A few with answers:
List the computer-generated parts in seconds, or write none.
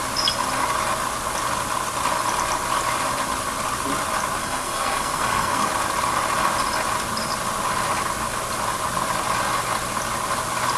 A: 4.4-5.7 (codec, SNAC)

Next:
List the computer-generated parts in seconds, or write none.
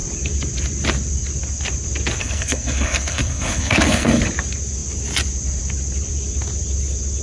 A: 2.2-4.2 (codec, SNAC)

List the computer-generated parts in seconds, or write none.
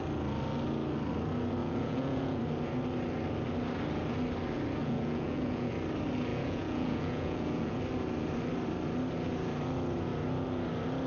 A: 1.6-2.4 (vocoder, Vocos); 4.8-5.7; 6.3-7.8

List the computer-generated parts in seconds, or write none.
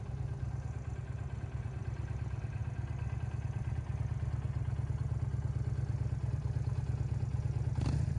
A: none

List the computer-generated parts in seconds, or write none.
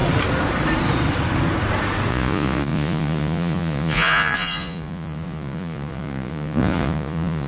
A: 2.1-7.5 (vocoder, Vocos)